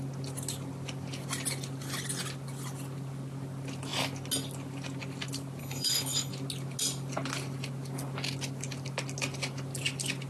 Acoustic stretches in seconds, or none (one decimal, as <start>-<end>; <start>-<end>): 0.0-5.6; 6.3-10.3